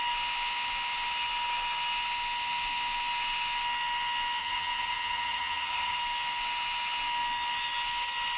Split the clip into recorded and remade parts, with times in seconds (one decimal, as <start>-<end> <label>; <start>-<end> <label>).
0.0-4.4 recorded; 4.4-6.0 remade; 6.0-8.4 recorded